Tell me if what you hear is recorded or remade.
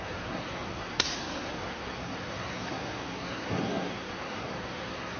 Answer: remade